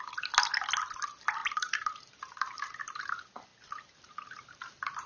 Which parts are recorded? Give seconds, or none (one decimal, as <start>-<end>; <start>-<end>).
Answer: 0.0-1.4; 3.1-3.5